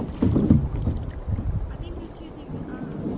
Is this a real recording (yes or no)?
yes